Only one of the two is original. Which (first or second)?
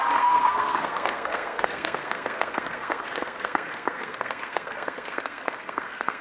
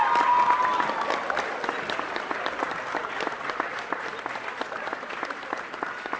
second